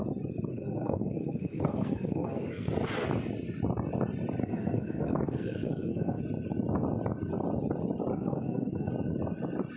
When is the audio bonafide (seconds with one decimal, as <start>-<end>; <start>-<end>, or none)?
0.0-0.5; 2.7-4.4; 6.2-8.1; 8.9-9.8